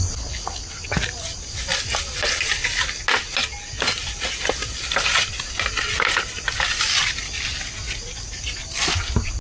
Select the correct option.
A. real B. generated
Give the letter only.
A